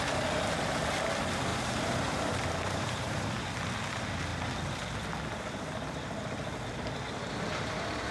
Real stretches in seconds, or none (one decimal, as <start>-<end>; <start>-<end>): 0.0-1.5; 3.3-8.1